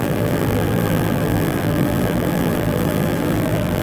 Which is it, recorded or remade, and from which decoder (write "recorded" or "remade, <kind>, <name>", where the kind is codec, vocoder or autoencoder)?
remade, vocoder, BigVGAN v2